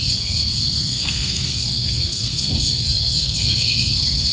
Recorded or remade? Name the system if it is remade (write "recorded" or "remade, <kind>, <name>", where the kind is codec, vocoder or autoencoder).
remade, codec, SNAC